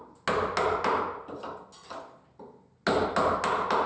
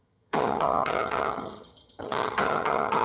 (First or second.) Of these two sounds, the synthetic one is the second